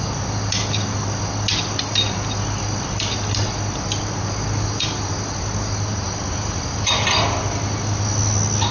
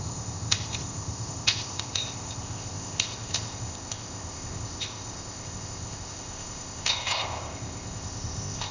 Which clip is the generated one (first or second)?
second